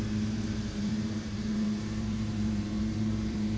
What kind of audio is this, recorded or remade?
remade